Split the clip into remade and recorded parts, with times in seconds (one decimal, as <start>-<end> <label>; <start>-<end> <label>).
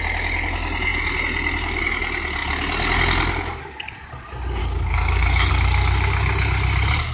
0.0-4.6 recorded; 4.6-5.5 remade; 5.5-7.1 recorded